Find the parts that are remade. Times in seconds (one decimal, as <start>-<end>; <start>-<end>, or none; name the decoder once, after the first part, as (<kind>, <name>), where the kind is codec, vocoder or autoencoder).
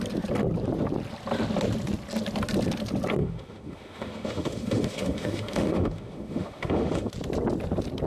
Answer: 3.2-7.1 (autoencoder, DAC-VAE)